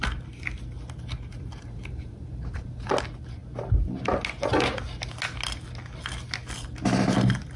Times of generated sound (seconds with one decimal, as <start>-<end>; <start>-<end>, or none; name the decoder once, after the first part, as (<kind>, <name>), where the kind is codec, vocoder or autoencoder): 1.3-2.9 (vocoder, BigVGAN v2)